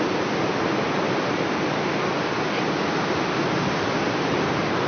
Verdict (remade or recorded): recorded